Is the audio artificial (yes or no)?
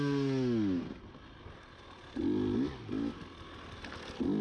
no